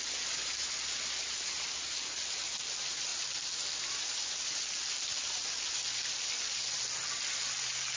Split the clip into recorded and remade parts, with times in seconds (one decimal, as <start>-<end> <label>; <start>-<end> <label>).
0.0-8.0 recorded